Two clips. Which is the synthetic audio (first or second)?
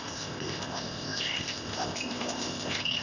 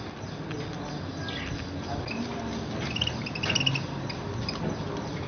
first